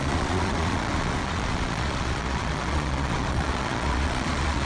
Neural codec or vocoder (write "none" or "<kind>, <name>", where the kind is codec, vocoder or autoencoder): vocoder, Vocos